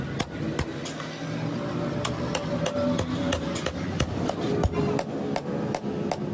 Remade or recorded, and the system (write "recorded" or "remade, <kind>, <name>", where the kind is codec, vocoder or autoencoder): recorded